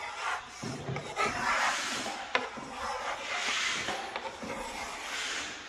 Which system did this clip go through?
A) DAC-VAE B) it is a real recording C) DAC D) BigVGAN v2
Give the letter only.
B